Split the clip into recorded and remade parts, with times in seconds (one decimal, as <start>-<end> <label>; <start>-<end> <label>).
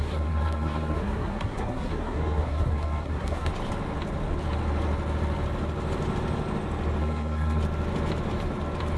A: 0.0-3.5 remade; 3.5-7.0 recorded; 7.0-7.6 remade; 7.6-9.0 recorded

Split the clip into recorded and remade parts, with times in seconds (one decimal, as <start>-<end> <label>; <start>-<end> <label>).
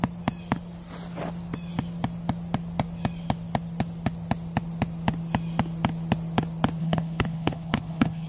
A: 0.0-6.8 recorded; 6.8-8.3 remade